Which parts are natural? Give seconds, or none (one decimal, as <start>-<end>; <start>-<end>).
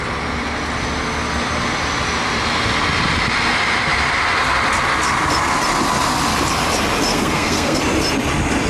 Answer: 0.0-7.1; 7.8-8.7